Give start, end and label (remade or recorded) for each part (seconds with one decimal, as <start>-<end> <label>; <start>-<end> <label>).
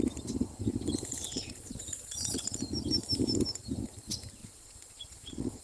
0.0-1.3 recorded; 1.3-2.6 remade; 2.6-4.4 recorded; 4.4-5.6 remade